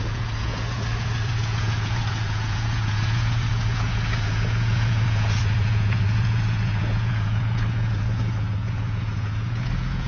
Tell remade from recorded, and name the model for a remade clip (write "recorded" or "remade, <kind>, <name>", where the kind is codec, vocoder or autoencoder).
remade, vocoder, Vocos